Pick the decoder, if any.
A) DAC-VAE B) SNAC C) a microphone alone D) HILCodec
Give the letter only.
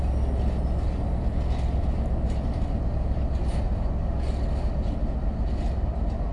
C